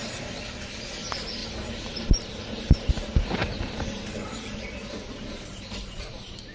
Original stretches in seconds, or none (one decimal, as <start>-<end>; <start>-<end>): 0.0-1.4; 2.9-3.4